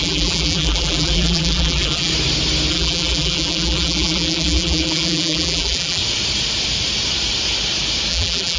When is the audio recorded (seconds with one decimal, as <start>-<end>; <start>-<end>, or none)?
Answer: 2.1-2.7; 6.0-8.1